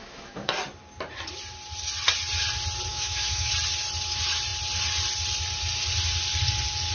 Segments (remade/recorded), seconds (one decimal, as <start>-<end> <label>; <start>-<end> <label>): 0.0-0.5 remade; 0.5-2.9 recorded; 2.9-3.5 remade; 3.5-6.9 recorded